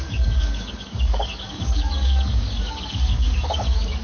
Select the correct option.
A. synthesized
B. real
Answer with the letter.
A